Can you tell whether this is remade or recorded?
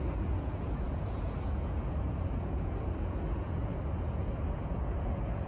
remade